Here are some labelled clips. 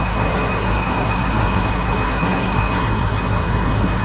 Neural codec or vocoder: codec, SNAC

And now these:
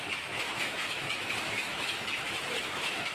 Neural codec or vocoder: autoencoder, DAC-VAE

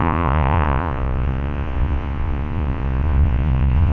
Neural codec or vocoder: vocoder, Vocos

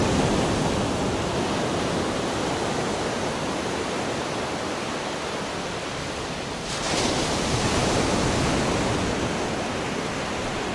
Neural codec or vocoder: none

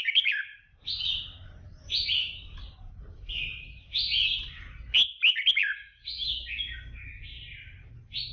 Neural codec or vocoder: none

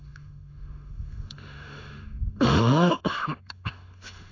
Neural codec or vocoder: autoencoder, DAC-VAE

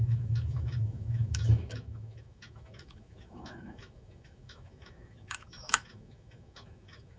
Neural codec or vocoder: autoencoder, DAC-VAE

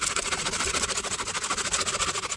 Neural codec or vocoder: none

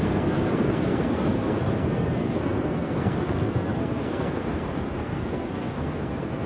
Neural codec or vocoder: codec, SNAC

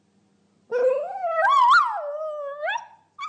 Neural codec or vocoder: none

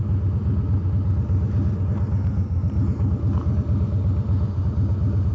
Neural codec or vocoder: none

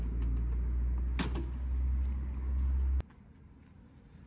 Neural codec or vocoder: none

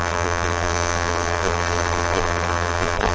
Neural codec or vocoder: vocoder, BigVGAN v2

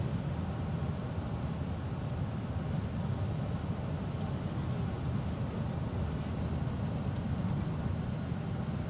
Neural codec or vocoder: none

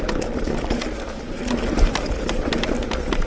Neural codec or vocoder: none